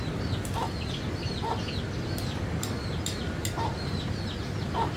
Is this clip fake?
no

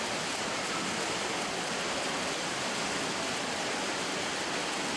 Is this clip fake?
no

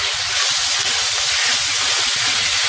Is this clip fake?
no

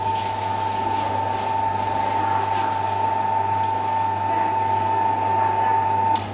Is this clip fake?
no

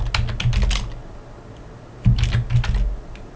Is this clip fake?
no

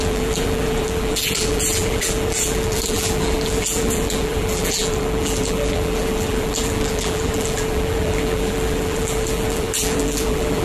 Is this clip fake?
yes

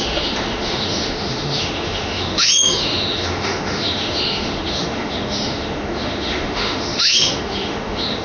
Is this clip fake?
yes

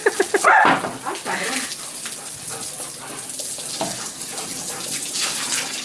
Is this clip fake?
no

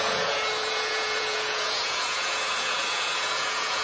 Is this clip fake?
yes